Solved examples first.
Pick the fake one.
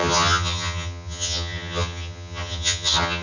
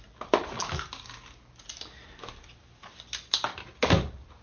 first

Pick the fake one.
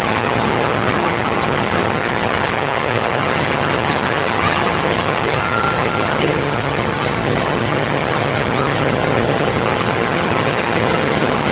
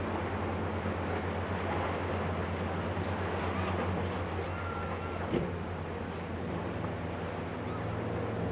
first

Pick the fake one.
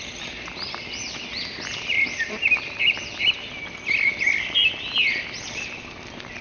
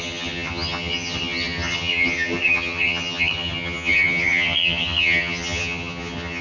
second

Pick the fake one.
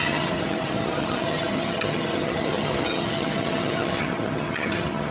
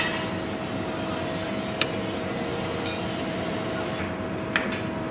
first